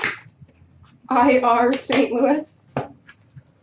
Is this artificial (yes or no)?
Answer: no